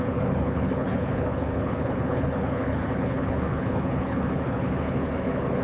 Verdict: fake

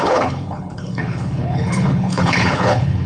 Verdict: fake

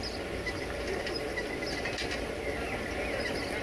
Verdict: real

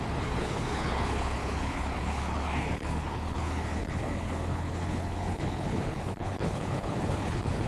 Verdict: fake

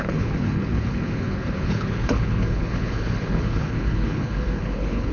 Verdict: fake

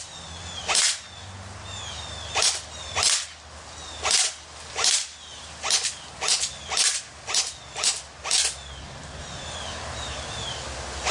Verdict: real